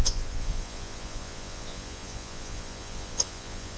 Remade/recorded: remade